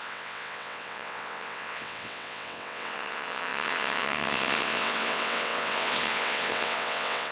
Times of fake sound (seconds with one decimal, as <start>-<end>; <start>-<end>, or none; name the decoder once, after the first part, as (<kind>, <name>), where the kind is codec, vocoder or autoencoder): 0.0-7.3 (vocoder, WaveNeXt)